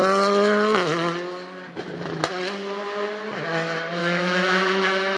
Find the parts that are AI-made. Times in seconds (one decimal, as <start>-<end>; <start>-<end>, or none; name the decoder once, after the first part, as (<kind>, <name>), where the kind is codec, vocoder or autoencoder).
4.0-5.2 (autoencoder, DAC-VAE)